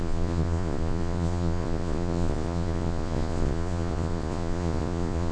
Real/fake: fake